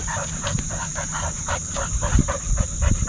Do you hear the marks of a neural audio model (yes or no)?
yes